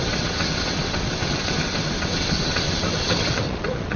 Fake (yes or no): yes